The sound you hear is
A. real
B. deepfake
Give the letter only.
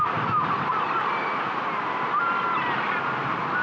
A